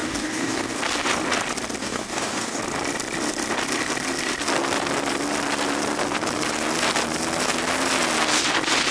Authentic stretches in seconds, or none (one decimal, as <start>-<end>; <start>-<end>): 0.8-1.8; 2.6-8.9